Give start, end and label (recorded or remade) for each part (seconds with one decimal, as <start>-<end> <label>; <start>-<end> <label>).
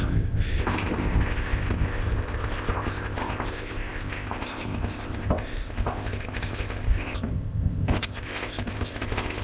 0.0-9.4 remade